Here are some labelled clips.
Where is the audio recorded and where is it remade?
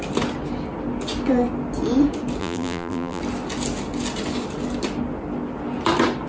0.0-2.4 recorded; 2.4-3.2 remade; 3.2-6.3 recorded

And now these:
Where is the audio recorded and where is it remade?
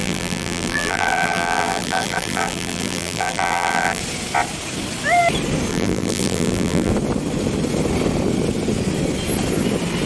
0.0-4.0 remade; 4.0-5.7 recorded; 5.7-6.9 remade; 6.9-10.1 recorded